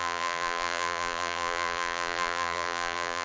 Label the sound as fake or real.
fake